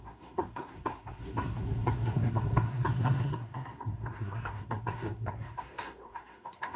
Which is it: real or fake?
fake